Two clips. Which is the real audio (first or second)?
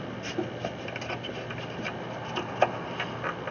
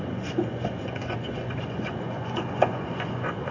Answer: first